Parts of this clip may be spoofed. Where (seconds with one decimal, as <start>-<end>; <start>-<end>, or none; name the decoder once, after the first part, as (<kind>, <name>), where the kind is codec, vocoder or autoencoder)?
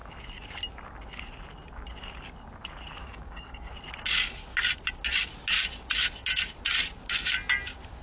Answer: 3.0-3.7 (codec, DAC)